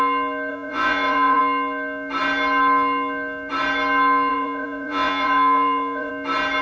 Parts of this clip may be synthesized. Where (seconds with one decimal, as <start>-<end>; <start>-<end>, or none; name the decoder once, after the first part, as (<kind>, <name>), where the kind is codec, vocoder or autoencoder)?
0.5-1.4 (vocoder, Vocos); 4.3-6.1